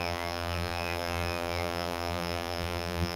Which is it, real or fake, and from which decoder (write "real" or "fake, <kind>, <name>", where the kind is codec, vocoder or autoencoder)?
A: fake, vocoder, BigVGAN v2